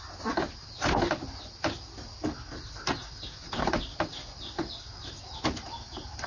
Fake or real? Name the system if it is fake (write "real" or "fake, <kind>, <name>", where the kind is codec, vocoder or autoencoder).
real